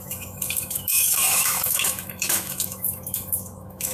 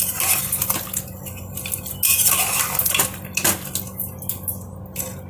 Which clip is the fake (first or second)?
first